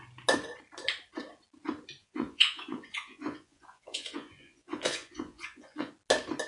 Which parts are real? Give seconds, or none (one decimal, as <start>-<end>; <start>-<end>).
0.0-2.0; 5.9-6.5